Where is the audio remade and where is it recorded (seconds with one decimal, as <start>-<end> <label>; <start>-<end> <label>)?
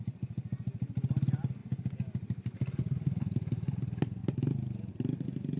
0.0-5.6 recorded